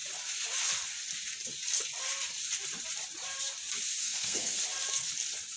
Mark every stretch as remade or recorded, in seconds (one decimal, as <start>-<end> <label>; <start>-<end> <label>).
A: 0.0-4.0 recorded; 4.0-4.6 remade; 4.6-5.6 recorded